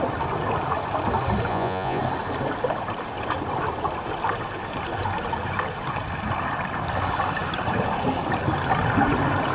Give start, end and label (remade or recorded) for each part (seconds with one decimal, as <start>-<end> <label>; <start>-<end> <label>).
0.0-1.5 recorded; 1.5-2.0 remade; 2.0-9.5 recorded